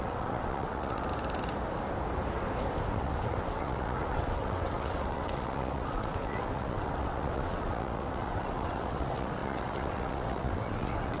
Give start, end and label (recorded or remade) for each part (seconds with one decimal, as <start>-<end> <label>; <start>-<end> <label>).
0.0-1.1 remade; 1.1-2.9 recorded; 2.9-11.2 remade